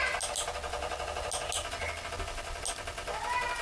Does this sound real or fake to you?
real